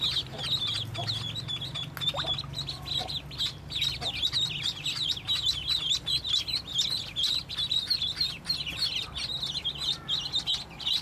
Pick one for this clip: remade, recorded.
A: recorded